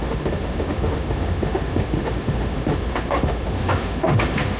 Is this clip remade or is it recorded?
remade